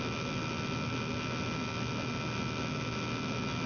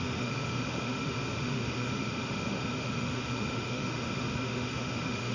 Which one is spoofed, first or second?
second